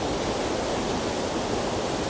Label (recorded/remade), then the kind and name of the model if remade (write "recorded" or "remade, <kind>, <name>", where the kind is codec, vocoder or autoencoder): recorded